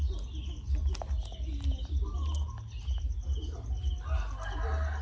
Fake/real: real